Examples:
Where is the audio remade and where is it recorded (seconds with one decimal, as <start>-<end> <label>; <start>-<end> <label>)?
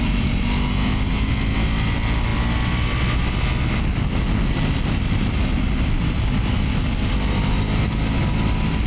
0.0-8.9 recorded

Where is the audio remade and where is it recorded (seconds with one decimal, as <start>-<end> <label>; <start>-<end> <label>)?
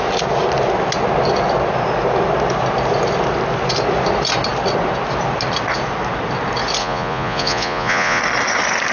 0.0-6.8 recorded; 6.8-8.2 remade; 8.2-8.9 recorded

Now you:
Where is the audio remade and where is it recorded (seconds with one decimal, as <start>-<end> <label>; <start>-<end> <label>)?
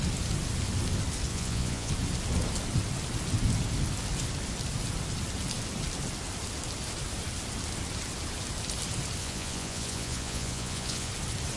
0.0-1.3 recorded; 1.3-1.9 remade; 1.9-9.2 recorded; 9.2-11.1 remade; 11.1-11.6 recorded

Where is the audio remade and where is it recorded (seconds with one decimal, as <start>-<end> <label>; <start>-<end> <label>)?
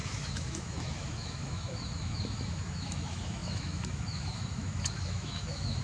0.0-5.8 remade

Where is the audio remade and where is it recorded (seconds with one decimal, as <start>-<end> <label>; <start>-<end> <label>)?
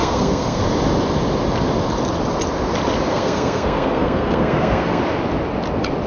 0.0-0.6 remade; 0.6-3.1 recorded; 3.1-5.0 remade; 5.0-6.1 recorded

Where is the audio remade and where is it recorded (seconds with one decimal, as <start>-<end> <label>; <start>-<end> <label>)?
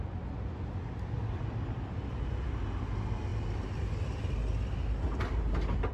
0.0-5.9 recorded